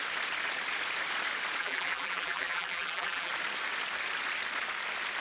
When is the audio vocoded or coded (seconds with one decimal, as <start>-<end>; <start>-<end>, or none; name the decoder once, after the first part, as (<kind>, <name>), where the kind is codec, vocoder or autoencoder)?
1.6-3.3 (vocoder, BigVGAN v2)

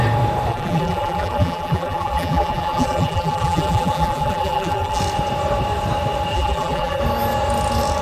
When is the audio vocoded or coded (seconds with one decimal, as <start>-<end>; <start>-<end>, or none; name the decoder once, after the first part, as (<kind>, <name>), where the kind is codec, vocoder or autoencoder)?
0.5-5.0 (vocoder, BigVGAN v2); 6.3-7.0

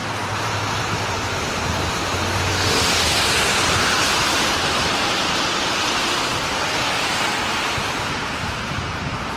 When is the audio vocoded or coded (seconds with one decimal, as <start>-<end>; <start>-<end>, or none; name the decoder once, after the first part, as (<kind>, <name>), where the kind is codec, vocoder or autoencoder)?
0.0-2.0 (vocoder, BigVGAN v2); 6.9-9.4